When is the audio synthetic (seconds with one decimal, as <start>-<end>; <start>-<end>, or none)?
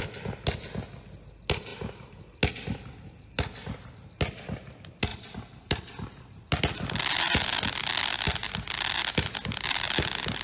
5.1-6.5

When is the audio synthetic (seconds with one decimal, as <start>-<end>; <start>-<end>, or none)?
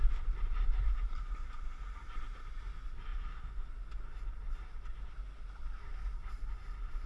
0.0-2.5; 3.1-3.7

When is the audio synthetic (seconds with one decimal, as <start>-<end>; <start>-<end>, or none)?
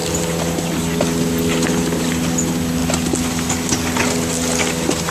none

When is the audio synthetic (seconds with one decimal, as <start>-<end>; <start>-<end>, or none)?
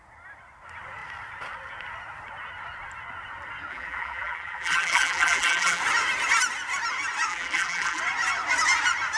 3.7-5.8; 7.3-8.0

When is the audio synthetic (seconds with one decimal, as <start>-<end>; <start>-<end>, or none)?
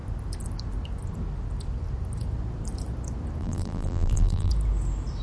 3.4-4.5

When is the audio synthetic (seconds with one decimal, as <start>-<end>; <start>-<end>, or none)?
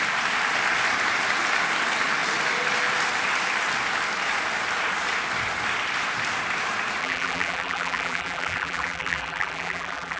7.0-10.2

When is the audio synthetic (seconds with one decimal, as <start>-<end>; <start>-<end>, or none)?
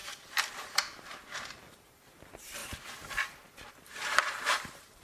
0.5-2.6; 3.7-5.0